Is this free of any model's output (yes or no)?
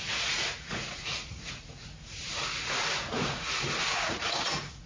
no